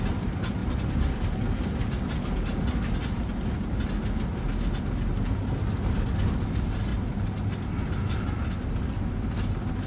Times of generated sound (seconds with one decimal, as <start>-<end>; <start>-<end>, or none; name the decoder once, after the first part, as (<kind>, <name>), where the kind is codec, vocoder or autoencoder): none